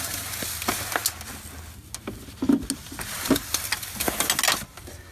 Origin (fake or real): real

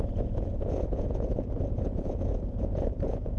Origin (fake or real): fake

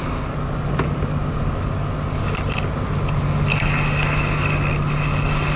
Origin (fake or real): real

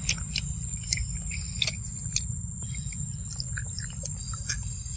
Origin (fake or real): real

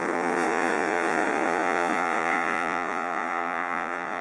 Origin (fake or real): fake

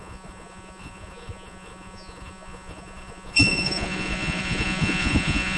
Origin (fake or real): fake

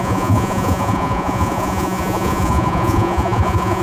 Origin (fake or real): fake